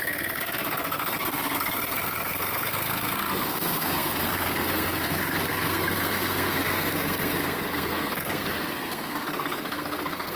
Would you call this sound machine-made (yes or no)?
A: yes